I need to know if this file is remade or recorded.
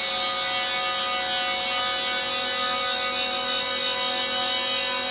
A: recorded